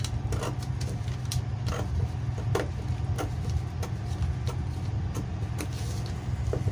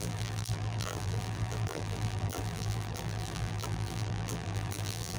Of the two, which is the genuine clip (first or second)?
first